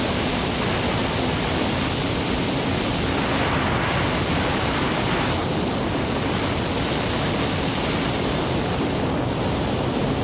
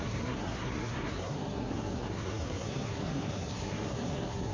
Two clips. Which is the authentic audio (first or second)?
first